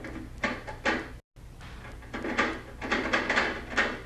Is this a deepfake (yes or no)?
no